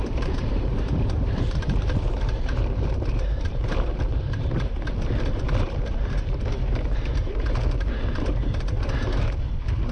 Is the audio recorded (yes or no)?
no